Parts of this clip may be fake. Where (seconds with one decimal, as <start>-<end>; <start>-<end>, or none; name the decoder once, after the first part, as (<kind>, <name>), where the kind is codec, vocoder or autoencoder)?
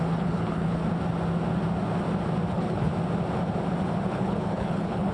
0.0-0.8 (codec, HILCodec); 2.5-2.9; 4.1-5.1